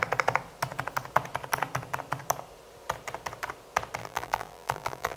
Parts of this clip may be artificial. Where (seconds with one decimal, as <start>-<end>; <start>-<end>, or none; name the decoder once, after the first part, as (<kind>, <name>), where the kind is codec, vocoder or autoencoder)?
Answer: 4.0-5.2 (vocoder, BigVGAN v2)